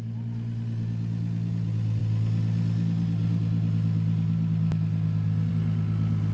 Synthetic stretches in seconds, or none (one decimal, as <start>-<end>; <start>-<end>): none